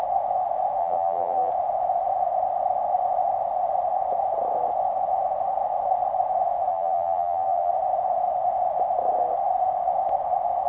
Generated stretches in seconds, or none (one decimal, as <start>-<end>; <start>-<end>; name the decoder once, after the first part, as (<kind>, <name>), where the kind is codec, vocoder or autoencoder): 0.8-1.5 (vocoder, BigVGAN v2); 6.7-7.7